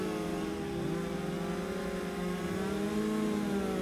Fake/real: real